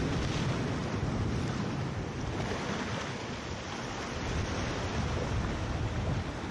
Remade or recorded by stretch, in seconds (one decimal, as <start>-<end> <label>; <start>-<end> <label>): 0.0-6.5 recorded